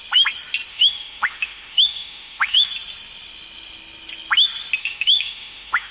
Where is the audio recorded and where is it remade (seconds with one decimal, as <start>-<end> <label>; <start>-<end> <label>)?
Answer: 0.0-0.7 recorded; 0.7-2.7 remade; 2.7-4.8 recorded; 4.8-5.9 remade